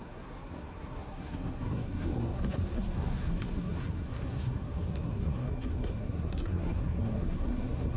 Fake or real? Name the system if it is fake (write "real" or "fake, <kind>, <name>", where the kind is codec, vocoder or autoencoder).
fake, codec, SNAC